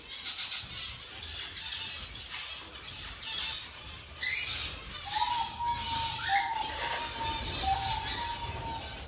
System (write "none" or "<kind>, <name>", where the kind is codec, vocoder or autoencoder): none